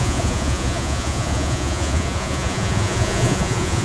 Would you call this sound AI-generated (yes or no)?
yes